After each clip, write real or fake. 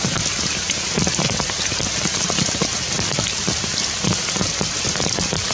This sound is real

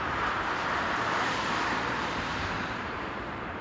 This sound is fake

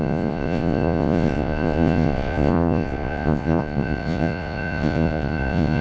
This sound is fake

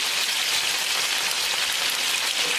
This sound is real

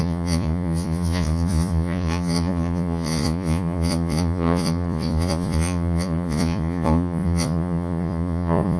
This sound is fake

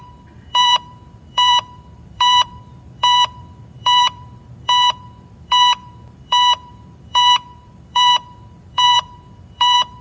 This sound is fake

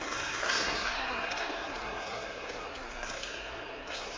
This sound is fake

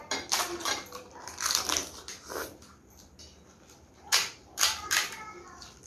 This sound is fake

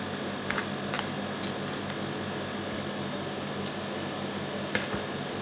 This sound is real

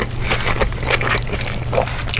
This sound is real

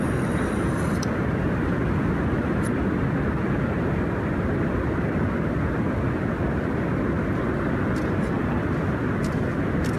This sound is real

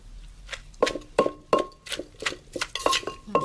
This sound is real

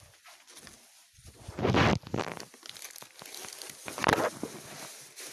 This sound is real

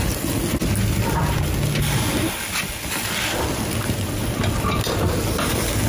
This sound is real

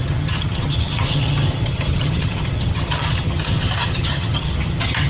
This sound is fake